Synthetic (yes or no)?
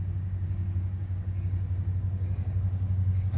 yes